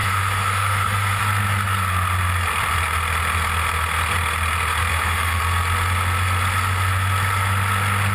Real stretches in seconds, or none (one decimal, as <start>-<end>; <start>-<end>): 1.2-4.9; 5.4-8.1